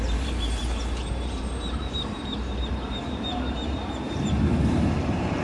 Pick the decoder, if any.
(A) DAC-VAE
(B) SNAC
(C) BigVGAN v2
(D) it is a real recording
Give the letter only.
C